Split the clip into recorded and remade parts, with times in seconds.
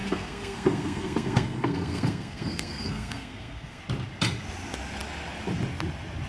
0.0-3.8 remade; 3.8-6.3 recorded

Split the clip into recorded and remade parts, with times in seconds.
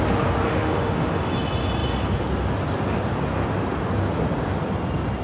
0.0-0.5 recorded; 0.5-1.3 remade; 1.3-5.2 recorded